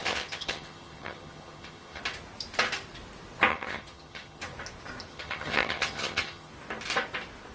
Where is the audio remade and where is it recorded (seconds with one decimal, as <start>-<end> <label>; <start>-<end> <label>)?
0.0-2.0 remade; 2.0-3.5 recorded; 3.5-4.4 remade; 4.4-5.1 recorded; 5.1-6.5 remade; 6.5-7.5 recorded